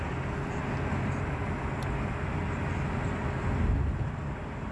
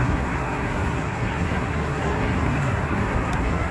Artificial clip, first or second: second